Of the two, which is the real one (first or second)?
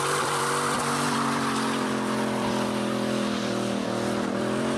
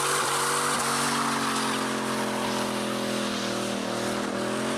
second